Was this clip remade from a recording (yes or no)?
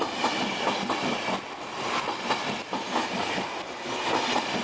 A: no